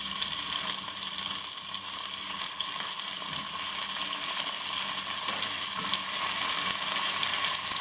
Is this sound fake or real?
real